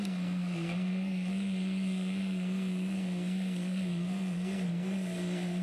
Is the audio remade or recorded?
remade